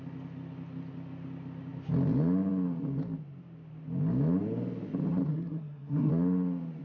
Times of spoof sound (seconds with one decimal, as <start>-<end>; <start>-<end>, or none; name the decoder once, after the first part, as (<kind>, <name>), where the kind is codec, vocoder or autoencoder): 5.3-6.1 (codec, SNAC)